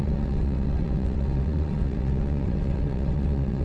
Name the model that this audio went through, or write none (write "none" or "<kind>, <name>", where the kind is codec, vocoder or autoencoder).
vocoder, WaveNeXt